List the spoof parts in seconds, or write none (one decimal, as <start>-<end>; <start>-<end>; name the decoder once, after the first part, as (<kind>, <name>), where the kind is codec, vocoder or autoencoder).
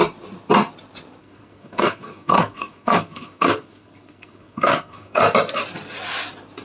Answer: 1.2-5.2 (codec, SNAC)